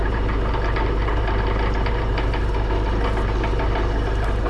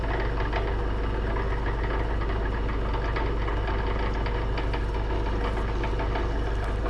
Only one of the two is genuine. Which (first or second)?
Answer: second